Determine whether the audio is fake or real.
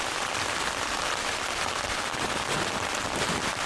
fake